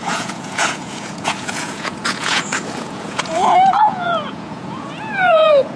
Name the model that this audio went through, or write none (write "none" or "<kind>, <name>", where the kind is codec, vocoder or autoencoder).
vocoder, Vocos